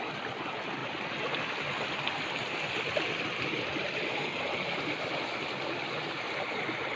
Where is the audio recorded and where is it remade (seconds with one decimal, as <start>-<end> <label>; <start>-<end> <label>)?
0.0-7.0 recorded